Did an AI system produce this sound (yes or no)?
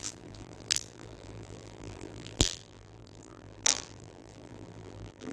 yes